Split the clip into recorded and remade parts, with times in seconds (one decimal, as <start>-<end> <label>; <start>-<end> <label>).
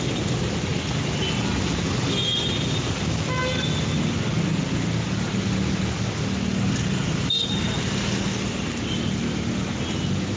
0.0-10.4 recorded